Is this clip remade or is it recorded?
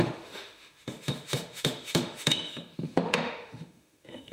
remade